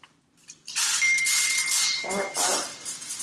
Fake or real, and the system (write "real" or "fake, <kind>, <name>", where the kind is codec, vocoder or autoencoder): fake, vocoder, BigVGAN v2